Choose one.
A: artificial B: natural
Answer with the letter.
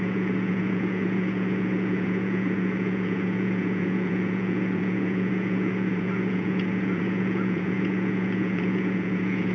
A